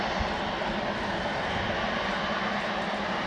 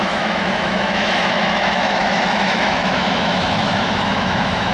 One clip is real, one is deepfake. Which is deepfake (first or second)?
second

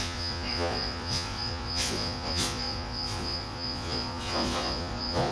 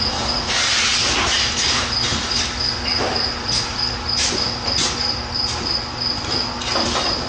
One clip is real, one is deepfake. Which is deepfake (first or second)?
first